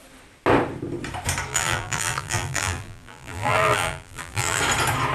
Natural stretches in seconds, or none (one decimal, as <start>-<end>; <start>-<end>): 0.0-1.5; 4.6-5.1